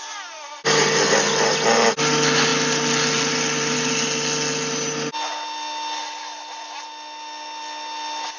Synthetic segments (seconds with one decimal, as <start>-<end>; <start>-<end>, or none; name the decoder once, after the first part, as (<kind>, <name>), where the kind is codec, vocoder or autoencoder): none